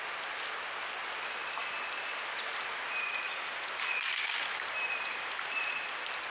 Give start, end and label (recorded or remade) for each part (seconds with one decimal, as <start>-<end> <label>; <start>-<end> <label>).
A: 0.0-6.3 recorded